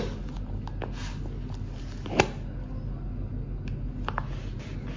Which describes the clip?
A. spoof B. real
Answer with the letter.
B